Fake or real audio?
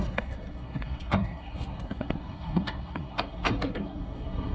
fake